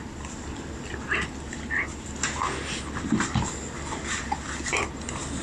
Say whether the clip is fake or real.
real